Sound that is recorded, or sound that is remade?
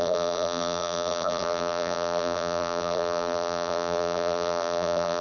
remade